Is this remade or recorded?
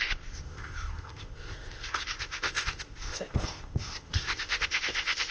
remade